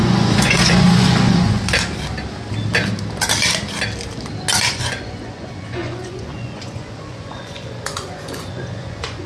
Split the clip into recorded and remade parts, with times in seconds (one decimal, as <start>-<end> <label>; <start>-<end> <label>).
0.0-1.6 remade; 1.6-4.7 recorded; 4.7-9.3 remade